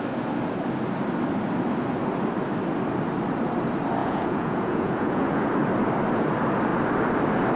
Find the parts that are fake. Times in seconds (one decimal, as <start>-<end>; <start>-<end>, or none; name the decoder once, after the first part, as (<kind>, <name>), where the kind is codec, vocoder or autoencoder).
4.0-5.5 (vocoder, Vocos)